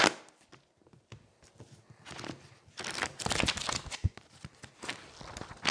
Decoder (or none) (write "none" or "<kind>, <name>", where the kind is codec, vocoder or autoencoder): none